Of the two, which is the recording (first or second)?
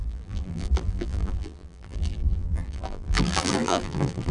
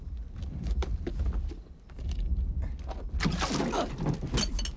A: second